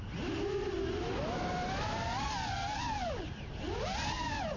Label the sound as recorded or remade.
recorded